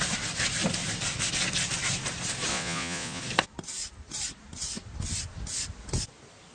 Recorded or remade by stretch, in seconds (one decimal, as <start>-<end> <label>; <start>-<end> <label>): 0.0-2.5 recorded; 2.5-3.2 remade; 3.2-6.5 recorded